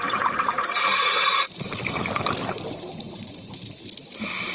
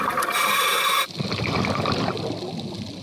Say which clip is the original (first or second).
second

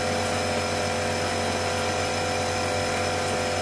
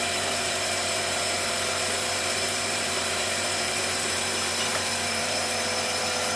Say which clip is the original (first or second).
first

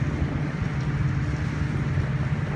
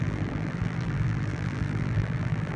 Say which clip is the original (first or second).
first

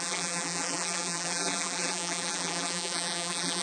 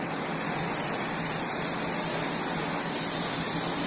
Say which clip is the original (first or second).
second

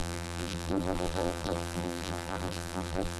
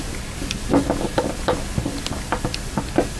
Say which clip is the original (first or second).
second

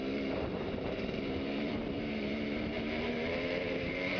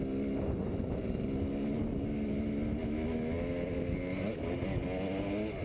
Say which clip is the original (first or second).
second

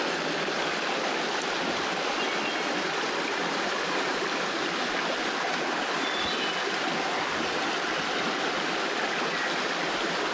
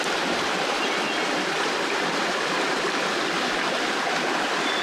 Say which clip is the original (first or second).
first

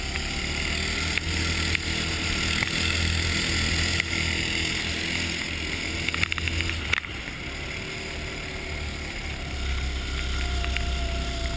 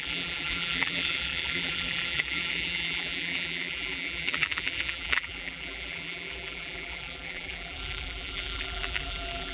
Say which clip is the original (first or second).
first